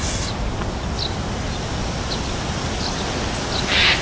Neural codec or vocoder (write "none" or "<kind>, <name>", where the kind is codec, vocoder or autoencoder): none